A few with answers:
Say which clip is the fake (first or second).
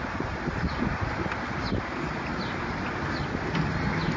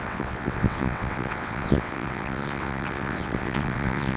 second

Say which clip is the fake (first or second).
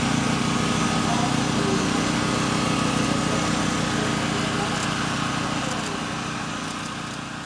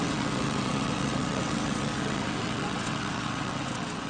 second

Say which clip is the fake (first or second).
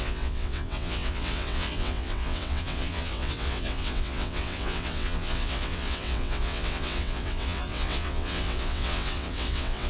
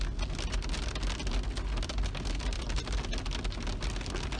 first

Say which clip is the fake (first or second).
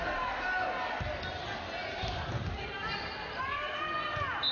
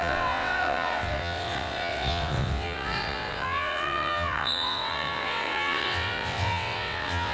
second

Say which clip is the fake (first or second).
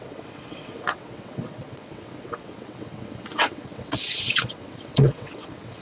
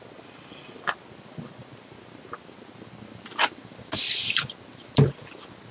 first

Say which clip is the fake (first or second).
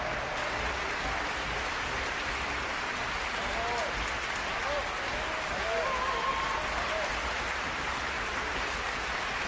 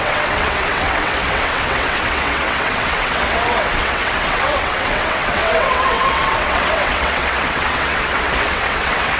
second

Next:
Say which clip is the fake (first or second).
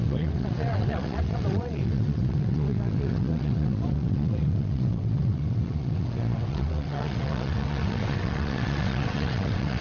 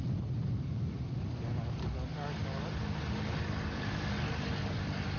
first